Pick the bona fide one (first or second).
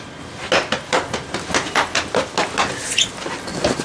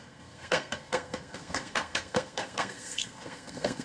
first